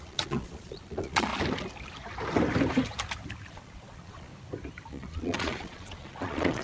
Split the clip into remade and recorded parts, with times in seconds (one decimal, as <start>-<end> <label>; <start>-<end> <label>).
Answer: 0.0-1.3 remade; 1.3-3.5 recorded; 3.5-4.3 remade; 4.3-4.9 recorded; 4.9-6.6 remade